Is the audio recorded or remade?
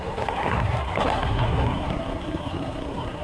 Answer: remade